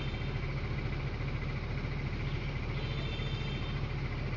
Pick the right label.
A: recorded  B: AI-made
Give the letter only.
A